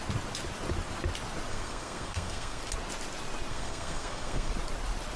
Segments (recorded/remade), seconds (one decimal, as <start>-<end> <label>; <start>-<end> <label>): 0.0-1.5 recorded; 1.5-2.6 remade; 2.6-3.5 recorded; 3.5-4.5 remade; 4.5-5.2 recorded